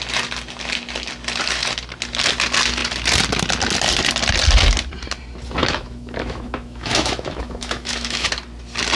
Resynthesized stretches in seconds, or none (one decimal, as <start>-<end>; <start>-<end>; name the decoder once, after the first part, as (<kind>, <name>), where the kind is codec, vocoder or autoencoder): 5.6-8.3 (autoencoder, DAC-VAE)